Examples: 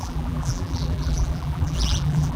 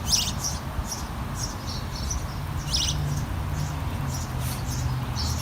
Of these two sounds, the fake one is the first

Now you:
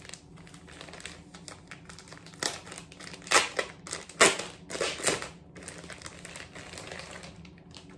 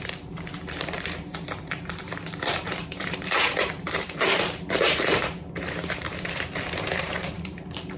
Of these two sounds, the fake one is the second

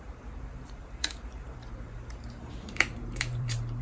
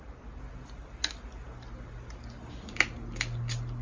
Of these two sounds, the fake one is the first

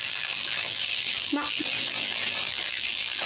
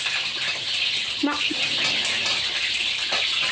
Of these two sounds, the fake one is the first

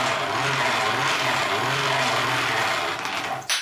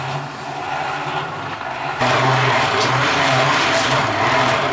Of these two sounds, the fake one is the second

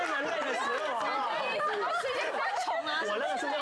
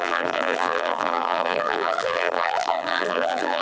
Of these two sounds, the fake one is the second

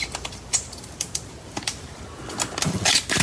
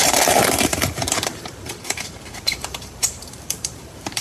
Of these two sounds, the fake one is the second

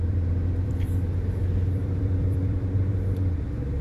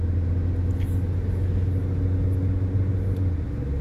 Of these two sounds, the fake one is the first